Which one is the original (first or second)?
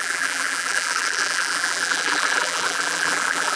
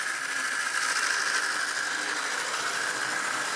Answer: second